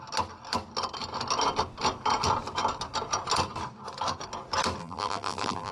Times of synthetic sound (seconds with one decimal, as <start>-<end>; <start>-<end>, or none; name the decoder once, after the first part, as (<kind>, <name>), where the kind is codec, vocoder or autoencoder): 4.8-5.7 (vocoder, BigVGAN v2)